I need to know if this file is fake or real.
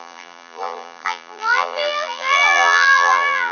fake